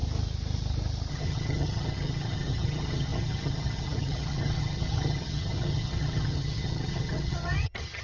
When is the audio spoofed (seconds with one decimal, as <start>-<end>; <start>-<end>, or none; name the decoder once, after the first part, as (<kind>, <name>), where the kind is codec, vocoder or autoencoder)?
1.1-8.0 (vocoder, HiFi-GAN)